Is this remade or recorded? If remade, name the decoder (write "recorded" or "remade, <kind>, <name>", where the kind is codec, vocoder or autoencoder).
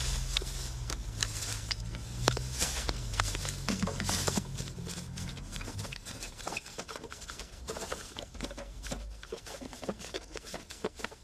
remade, codec, SNAC